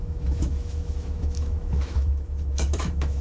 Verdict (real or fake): fake